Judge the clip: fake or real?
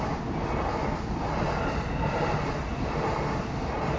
real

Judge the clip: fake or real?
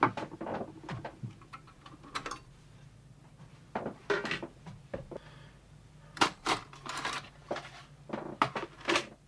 real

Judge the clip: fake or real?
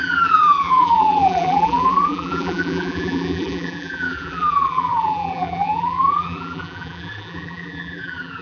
fake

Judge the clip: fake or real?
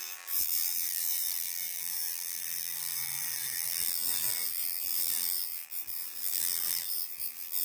fake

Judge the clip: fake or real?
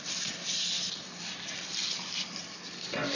real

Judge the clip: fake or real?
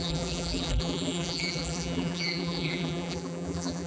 fake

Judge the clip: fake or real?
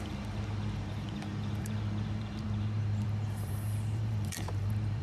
fake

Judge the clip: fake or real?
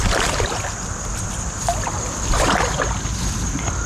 real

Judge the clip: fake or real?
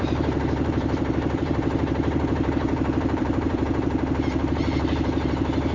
fake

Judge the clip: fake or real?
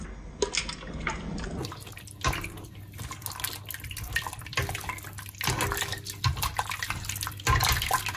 real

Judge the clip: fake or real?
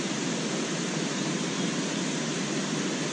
real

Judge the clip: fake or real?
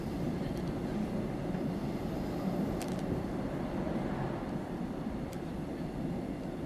fake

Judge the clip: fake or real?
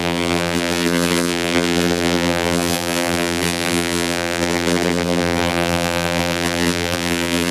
fake